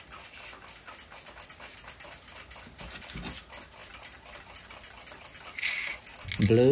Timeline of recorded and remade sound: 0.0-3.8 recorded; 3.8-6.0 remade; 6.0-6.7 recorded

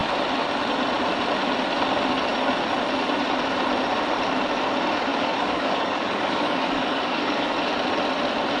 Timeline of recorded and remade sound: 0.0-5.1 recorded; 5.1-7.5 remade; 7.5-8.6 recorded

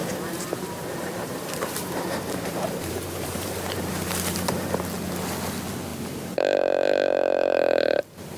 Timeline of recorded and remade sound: 0.0-4.7 remade; 4.7-8.4 recorded

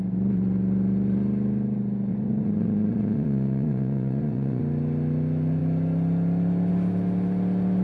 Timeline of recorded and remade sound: 0.0-2.1 recorded; 2.1-4.6 remade; 4.6-7.8 recorded

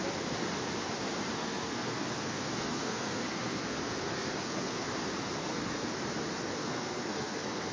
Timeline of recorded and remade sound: 0.0-1.4 recorded; 1.4-4.9 remade; 4.9-5.4 recorded; 5.4-5.9 remade; 5.9-6.6 recorded; 6.6-7.7 remade

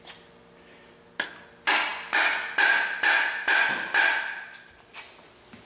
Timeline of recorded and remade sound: 0.0-5.6 recorded